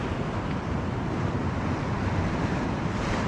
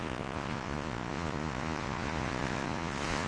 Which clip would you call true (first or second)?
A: first